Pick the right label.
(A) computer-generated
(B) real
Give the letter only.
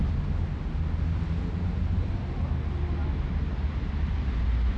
B